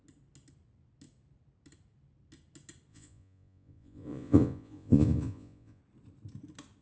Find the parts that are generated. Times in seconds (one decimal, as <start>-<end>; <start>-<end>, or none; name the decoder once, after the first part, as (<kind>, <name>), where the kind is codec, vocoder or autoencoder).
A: 2.9-5.8 (vocoder, Vocos)